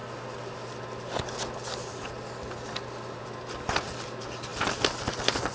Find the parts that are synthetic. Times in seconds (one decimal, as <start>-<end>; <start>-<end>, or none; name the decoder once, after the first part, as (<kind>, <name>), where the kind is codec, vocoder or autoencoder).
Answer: none